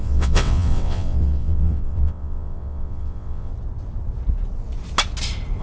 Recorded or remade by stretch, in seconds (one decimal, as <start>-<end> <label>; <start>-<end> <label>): 0.0-3.5 remade; 3.5-5.6 recorded